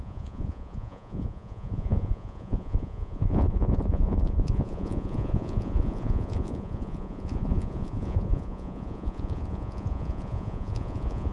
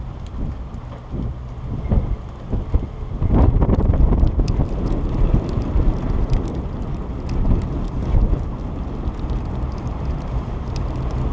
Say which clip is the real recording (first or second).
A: second